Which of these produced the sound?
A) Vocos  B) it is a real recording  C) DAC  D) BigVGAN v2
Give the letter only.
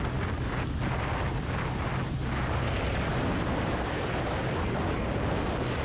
B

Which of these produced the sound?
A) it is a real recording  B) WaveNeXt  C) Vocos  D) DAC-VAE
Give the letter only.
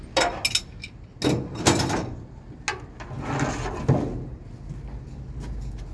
A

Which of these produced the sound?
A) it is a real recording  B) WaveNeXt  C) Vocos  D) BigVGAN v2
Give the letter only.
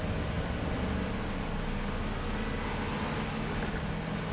A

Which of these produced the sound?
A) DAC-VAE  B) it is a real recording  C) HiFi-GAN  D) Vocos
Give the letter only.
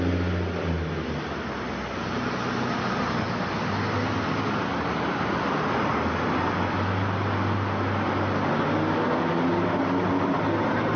B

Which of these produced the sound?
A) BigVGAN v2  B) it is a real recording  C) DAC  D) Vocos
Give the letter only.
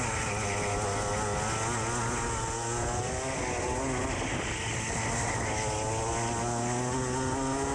B